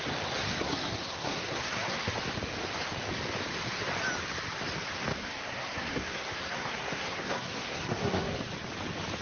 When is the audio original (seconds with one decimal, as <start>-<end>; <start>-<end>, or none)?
0.0-0.4; 2.1-5.1; 8.4-9.2